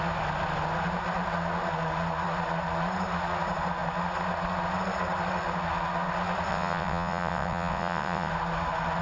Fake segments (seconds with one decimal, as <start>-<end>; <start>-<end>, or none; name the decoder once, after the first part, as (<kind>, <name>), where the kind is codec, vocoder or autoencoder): 6.5-8.3 (vocoder, WaveNeXt)